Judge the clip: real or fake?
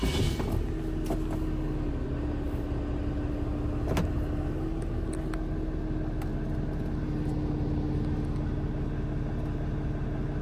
real